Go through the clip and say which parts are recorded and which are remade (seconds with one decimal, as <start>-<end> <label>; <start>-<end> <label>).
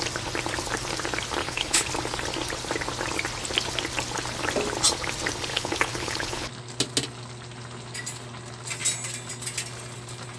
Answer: 0.0-1.4 recorded; 1.4-1.9 remade; 1.9-5.5 recorded; 5.5-6.5 remade; 6.5-10.4 recorded